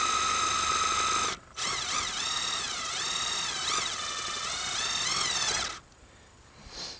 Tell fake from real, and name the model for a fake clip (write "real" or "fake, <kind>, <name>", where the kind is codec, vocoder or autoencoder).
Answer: real